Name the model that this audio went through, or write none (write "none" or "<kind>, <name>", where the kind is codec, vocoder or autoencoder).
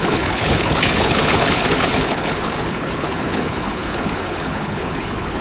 codec, HILCodec